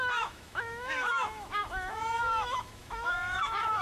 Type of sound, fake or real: fake